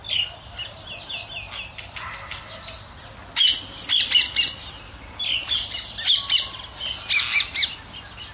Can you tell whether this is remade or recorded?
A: recorded